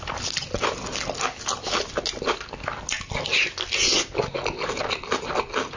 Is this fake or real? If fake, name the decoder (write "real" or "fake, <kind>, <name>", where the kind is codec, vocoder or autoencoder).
real